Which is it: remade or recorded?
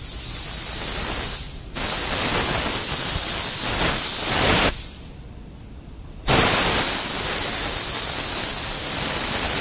recorded